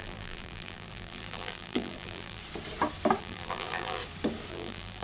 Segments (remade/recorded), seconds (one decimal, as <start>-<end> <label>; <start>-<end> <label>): 0.0-2.4 remade; 2.4-3.2 recorded; 3.2-4.0 remade; 4.0-4.5 recorded; 4.5-5.0 remade